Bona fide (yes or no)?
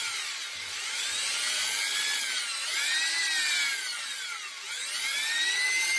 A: yes